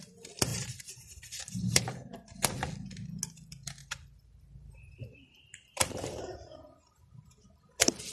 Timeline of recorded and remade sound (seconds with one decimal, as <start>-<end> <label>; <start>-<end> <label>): 0.0-0.5 recorded; 0.5-1.8 remade; 1.8-3.8 recorded; 3.8-7.1 remade; 7.1-8.1 recorded